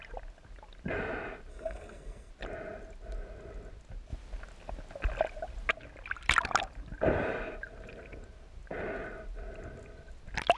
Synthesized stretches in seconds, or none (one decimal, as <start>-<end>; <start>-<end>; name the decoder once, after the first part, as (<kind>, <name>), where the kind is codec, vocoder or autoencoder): 1.5-2.3 (codec, SNAC)